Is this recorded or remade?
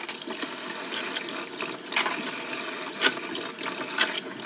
recorded